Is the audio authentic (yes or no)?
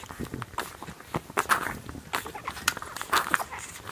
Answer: yes